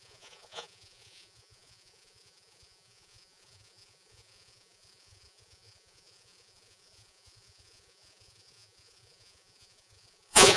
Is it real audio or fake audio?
fake